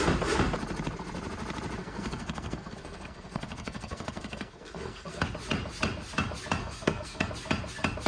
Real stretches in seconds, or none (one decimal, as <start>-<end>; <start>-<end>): 0.0-1.8; 5.2-6.6; 7.3-8.1